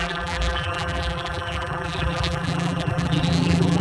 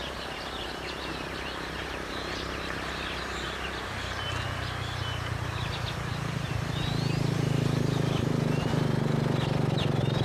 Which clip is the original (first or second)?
second